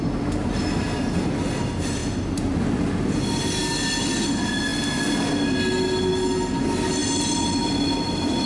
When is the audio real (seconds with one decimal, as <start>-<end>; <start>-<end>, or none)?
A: 0.0-8.5